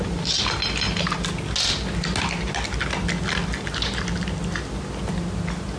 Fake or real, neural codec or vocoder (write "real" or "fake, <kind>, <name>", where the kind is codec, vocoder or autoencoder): real